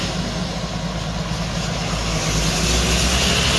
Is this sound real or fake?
real